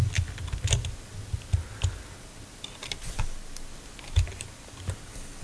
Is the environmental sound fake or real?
real